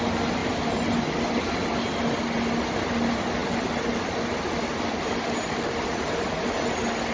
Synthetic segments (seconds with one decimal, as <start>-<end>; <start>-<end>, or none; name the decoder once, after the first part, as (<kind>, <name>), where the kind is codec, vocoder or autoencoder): none